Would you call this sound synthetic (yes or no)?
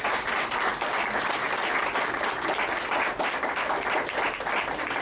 no